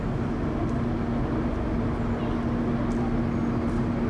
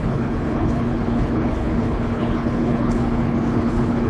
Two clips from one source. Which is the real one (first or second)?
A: first